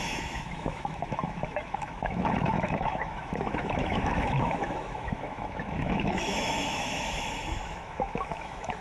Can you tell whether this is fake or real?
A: fake